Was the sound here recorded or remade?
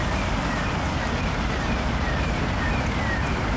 recorded